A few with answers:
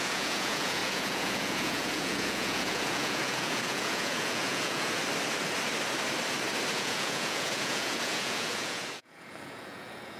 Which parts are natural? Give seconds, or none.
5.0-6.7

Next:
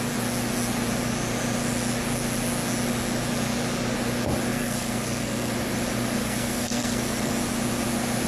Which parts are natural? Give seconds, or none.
0.0-4.5; 5.5-6.2; 7.3-8.3